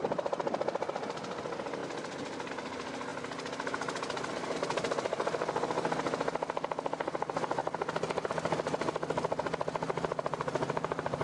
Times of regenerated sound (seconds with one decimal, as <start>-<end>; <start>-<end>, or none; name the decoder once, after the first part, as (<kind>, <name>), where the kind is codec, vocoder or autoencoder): none